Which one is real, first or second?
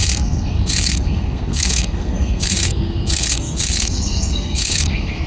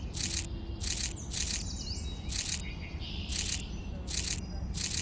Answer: second